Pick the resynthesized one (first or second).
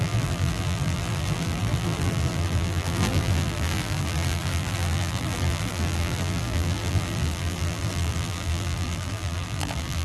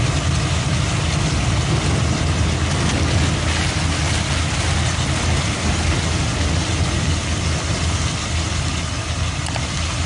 first